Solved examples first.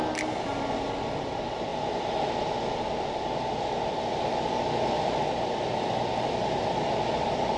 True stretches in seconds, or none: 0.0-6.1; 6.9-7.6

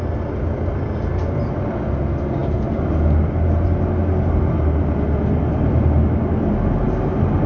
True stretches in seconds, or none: 0.0-7.5

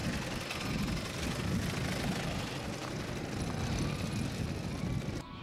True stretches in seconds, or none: 0.0-0.7

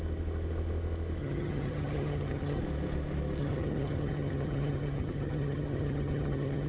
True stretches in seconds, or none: 0.0-1.2; 2.6-3.4

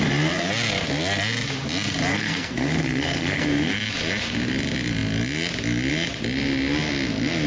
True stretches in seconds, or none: 0.0-2.1; 3.7-7.5

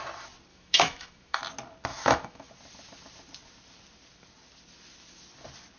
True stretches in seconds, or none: 0.0-0.5; 1.4-1.9; 2.5-5.8

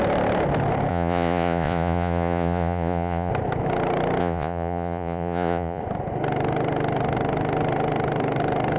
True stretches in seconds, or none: 0.0-0.9; 3.3-4.2; 5.8-8.8

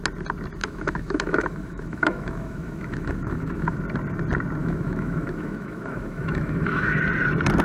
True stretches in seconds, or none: 0.0-0.6; 3.8-4.6; 7.0-7.6